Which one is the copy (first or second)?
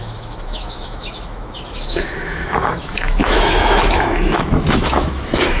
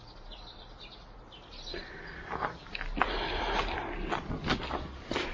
first